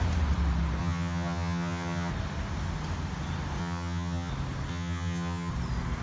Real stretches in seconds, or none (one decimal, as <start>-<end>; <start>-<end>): 0.0-0.8; 2.1-3.6; 4.3-4.7; 5.5-6.0